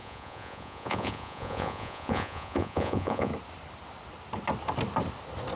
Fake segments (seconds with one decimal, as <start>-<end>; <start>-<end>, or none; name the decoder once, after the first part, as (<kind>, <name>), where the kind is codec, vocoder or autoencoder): 0.0-3.3 (vocoder, Vocos)

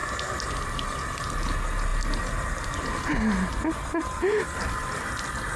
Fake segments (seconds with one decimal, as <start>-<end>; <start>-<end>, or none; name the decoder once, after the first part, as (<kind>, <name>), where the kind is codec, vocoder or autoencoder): none

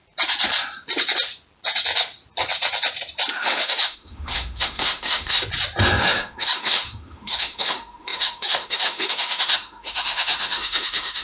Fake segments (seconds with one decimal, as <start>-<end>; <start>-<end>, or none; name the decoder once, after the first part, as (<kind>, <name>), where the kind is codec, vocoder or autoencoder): 3.3-5.4 (autoencoder, DAC-VAE); 6.0-11.2

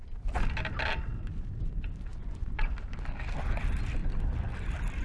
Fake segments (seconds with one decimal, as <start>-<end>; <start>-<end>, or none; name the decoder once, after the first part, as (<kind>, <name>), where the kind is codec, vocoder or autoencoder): 2.1-2.7 (vocoder, Vocos)

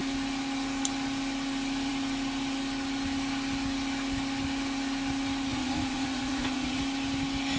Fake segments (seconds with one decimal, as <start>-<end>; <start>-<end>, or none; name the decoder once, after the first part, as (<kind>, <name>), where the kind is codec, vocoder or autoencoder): 5.5-6.8 (vocoder, Vocos)

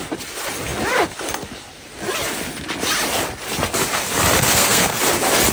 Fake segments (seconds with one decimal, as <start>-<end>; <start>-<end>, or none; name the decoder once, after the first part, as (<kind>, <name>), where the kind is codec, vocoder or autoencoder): 4.4-5.0 (codec, SNAC)

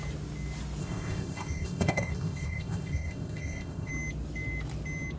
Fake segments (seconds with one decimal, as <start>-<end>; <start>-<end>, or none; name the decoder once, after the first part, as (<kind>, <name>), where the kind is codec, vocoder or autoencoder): 0.8-3.9 (codec, ZipCodec)